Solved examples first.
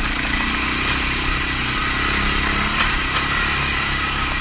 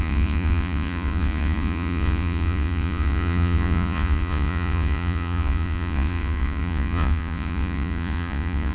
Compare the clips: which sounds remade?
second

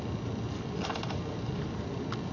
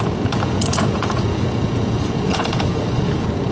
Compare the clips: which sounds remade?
second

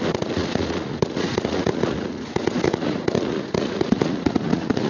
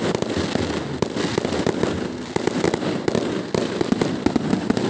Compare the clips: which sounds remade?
first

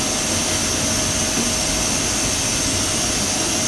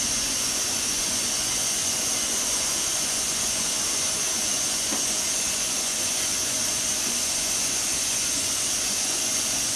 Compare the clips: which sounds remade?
second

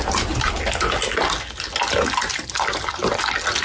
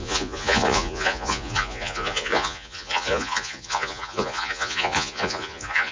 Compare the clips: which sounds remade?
second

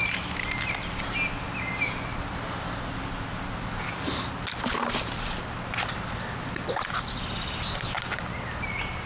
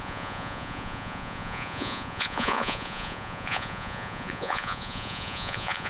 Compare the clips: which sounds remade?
second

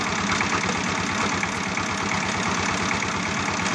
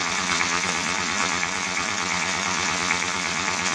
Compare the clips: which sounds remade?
second